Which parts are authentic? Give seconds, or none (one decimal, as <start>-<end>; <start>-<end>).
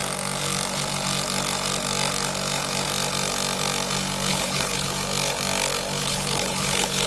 0.0-4.3; 4.9-6.0